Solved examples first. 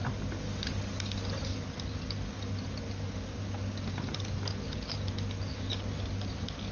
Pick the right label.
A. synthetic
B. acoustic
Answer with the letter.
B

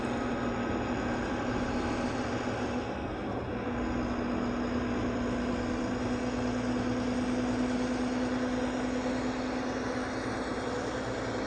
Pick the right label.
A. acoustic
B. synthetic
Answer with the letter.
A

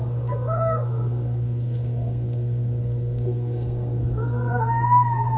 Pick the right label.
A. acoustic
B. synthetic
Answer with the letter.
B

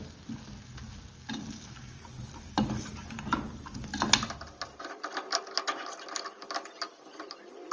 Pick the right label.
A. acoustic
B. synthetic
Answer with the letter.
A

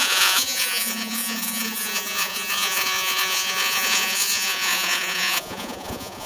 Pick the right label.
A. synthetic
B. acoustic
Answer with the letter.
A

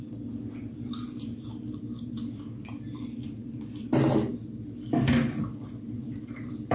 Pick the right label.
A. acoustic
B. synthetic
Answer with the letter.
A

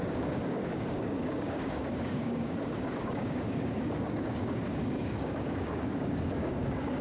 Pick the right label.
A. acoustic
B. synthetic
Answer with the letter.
B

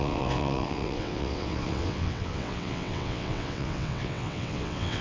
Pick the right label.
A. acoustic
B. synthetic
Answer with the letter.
B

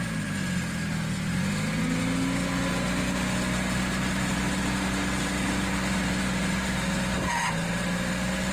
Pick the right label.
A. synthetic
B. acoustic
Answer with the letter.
B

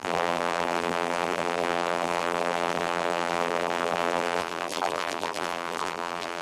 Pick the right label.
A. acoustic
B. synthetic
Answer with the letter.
B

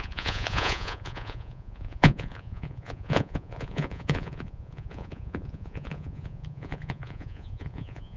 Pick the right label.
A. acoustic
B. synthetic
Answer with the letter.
B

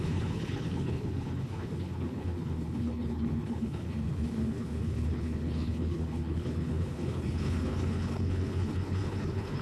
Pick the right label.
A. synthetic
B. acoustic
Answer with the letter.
A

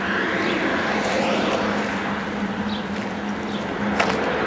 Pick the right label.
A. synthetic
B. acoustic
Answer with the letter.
B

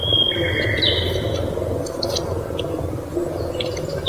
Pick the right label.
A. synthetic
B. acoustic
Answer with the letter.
B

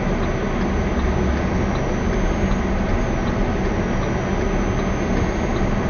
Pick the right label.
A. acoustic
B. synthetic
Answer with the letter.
A